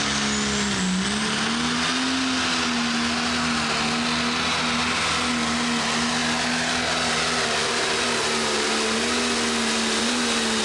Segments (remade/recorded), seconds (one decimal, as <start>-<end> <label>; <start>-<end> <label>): 0.0-10.6 recorded